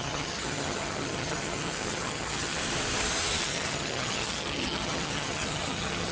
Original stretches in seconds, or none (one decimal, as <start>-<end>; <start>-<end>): 2.6-3.4